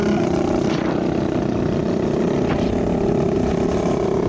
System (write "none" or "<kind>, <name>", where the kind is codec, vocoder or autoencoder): none